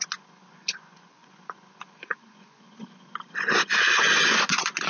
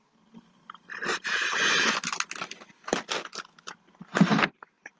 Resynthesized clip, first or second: first